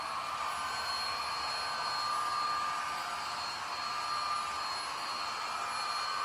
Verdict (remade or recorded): recorded